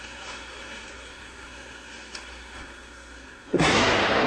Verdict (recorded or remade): remade